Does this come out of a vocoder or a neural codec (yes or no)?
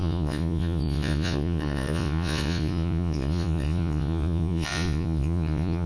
yes